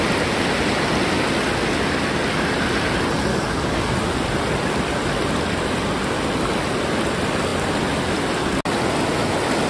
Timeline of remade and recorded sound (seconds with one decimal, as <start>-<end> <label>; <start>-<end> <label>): 0.0-3.3 recorded; 3.3-3.9 remade; 3.9-9.7 recorded